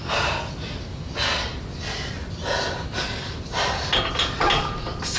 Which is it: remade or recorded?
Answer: recorded